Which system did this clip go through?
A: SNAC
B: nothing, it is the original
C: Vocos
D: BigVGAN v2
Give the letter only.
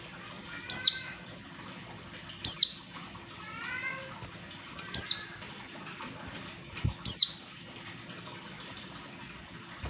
B